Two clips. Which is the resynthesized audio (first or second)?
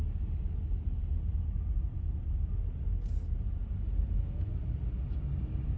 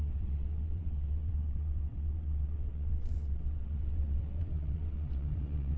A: second